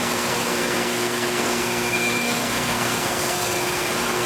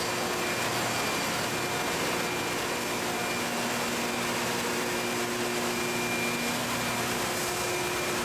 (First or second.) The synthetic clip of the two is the first